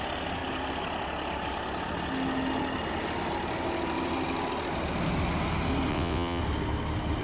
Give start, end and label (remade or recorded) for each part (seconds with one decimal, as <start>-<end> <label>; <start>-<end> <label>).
0.0-5.9 recorded; 5.9-6.4 remade; 6.4-7.2 recorded

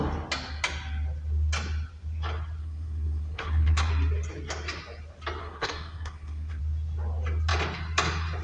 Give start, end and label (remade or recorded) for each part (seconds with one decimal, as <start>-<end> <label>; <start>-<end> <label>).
0.0-2.6 recorded; 2.6-3.9 remade; 3.9-5.4 recorded; 5.4-6.6 remade; 6.6-8.4 recorded

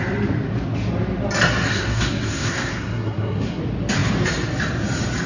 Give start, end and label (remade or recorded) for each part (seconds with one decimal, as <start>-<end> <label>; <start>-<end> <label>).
0.0-1.7 recorded; 1.7-3.6 remade; 3.6-5.3 recorded

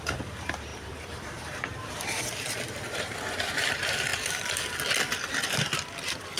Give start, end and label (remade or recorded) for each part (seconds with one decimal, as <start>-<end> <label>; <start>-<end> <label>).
0.0-4.1 remade; 4.1-6.4 recorded

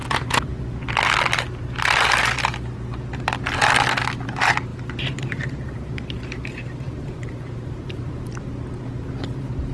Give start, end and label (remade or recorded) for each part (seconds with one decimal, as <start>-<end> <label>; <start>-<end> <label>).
0.0-4.7 recorded; 4.7-8.4 remade; 8.4-9.7 recorded